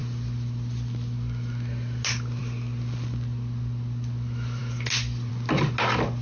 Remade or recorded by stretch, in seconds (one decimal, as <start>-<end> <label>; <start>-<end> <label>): 0.0-6.2 recorded